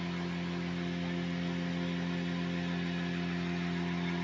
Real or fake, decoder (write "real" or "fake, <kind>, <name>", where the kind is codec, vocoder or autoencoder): real